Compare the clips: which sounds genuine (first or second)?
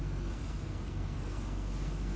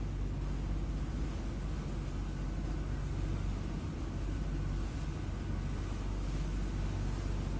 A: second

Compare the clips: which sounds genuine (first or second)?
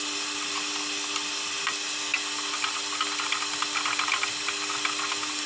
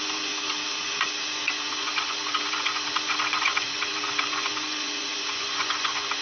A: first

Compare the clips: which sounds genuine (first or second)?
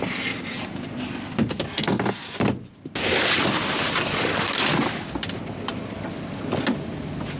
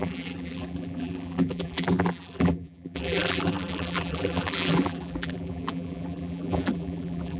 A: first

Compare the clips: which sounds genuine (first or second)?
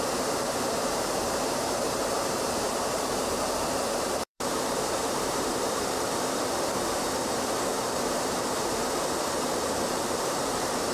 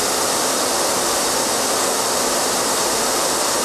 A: second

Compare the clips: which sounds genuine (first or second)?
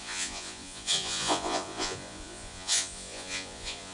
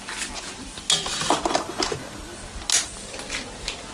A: second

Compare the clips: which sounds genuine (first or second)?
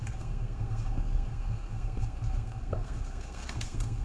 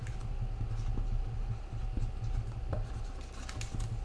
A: second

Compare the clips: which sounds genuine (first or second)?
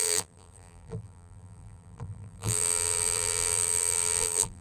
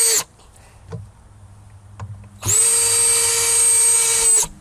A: second